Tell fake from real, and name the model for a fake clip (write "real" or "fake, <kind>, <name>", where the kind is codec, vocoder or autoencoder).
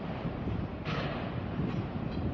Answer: fake, vocoder, BigVGAN v2